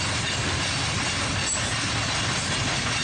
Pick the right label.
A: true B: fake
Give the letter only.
A